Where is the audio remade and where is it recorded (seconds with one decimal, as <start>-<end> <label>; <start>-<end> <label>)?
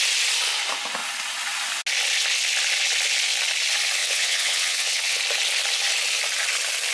0.0-4.0 recorded; 4.0-5.2 remade; 5.2-6.9 recorded